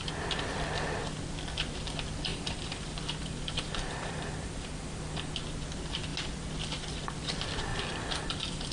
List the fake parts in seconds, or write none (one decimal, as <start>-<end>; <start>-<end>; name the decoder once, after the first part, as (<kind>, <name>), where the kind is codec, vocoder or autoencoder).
2.3-5.3 (vocoder, BigVGAN v2); 7.7-8.7